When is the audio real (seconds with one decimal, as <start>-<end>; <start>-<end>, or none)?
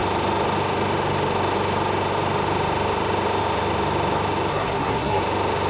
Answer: 0.0-4.5; 5.2-5.7